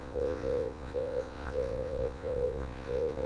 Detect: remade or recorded remade